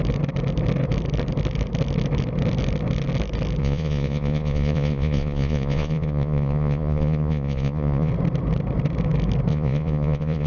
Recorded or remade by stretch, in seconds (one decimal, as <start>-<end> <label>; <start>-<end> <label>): 0.0-3.6 recorded; 3.6-8.1 remade; 8.1-9.5 recorded; 9.5-10.5 remade